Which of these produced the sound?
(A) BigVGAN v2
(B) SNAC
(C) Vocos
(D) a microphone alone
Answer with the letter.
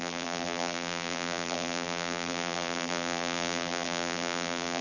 A